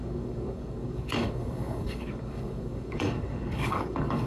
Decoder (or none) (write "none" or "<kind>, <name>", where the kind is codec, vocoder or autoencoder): codec, DAC